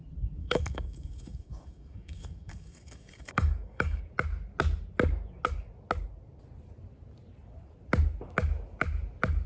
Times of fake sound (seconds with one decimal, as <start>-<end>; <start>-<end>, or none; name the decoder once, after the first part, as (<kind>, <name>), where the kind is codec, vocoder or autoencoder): 0.4-4.0 (codec, DAC)